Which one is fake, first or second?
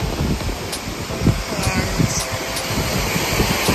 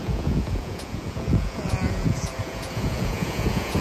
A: second